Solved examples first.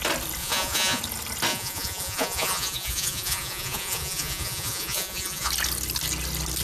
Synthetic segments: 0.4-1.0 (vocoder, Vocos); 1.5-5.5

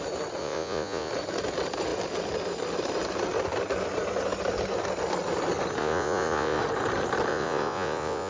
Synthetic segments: 0.4-1.1 (vocoder, Vocos); 5.8-6.6; 7.3-8.3

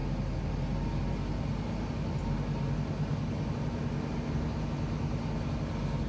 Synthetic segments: none

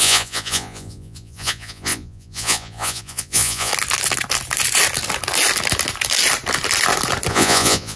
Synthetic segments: 0.0-3.7 (vocoder, Vocos); 7.3-8.0

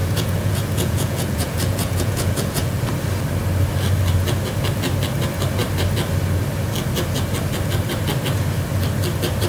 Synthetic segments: 0.0-2.8 (vocoder, Vocos)

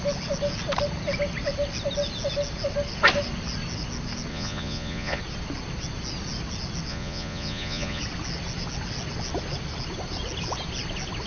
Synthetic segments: 4.3-5.2 (vocoder, Vocos); 6.9-8.0